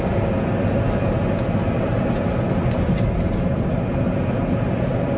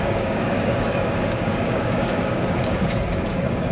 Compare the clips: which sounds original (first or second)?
first